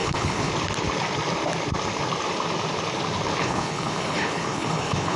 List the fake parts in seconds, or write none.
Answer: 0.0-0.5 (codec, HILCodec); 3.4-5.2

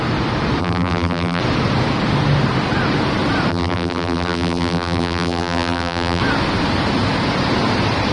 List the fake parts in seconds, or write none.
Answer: 0.6-1.4 (vocoder, BigVGAN v2); 3.5-6.2

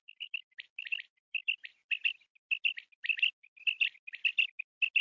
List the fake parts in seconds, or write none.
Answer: none

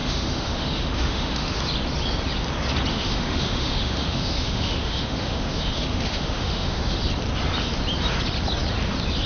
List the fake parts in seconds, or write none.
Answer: 0.0-1.6 (autoencoder, DAC-VAE); 2.9-7.0

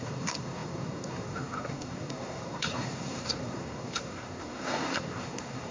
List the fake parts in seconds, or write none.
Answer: 0.0-5.7 (codec, SNAC)